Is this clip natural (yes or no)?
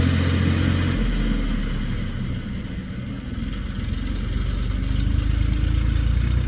yes